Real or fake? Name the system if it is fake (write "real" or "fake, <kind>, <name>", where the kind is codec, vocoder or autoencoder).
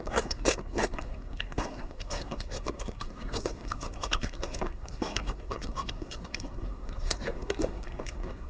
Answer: fake, codec, SNAC